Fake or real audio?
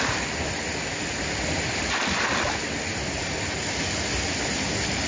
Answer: real